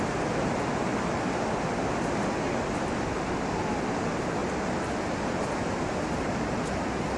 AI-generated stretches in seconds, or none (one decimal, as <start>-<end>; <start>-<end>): none